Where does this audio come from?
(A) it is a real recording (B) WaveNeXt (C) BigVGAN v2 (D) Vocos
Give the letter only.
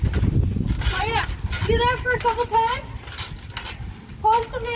A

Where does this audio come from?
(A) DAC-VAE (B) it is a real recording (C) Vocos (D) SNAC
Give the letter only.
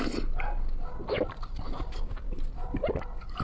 B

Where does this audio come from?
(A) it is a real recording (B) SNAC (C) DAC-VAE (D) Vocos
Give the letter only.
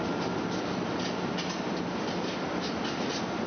A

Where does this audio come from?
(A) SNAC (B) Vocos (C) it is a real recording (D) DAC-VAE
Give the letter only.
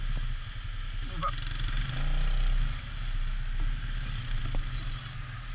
C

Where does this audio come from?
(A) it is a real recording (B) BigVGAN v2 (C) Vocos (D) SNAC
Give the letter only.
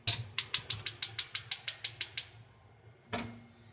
A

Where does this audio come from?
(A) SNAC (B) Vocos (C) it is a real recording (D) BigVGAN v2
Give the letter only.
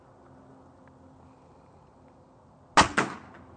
C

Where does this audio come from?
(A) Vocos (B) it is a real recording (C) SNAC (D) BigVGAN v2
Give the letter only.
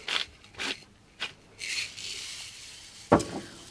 B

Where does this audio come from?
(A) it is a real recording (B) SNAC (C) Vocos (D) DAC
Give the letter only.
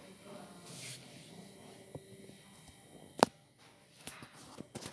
A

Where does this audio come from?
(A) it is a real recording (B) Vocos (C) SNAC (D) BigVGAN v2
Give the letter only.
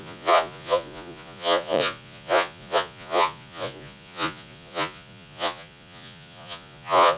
B